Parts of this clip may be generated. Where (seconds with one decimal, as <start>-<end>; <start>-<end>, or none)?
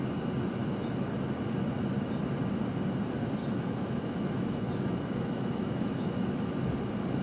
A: 3.4-6.5